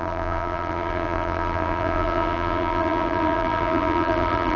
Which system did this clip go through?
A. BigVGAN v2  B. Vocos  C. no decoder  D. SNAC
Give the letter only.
A